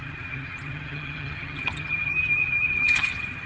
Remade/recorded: remade